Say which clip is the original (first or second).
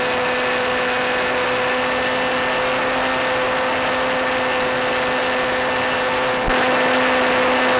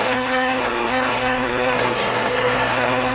first